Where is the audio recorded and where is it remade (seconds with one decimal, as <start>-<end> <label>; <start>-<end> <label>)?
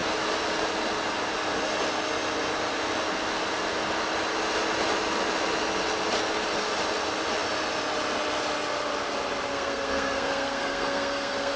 0.0-9.5 recorded; 9.5-11.6 remade